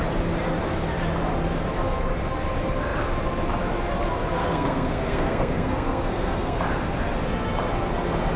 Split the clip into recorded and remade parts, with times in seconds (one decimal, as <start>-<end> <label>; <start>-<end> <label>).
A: 0.0-4.4 recorded; 4.4-6.6 remade; 6.6-8.4 recorded